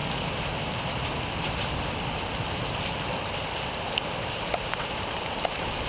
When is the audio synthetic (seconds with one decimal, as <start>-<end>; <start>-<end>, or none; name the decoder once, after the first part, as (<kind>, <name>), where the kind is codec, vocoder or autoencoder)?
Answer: 3.5-5.9 (vocoder, BigVGAN v2)